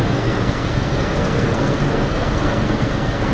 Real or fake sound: fake